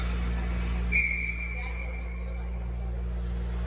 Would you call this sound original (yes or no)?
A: yes